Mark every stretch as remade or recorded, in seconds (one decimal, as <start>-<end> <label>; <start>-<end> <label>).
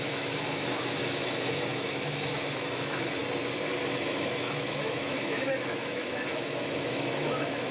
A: 0.0-3.2 remade; 3.2-3.8 recorded; 3.8-7.7 remade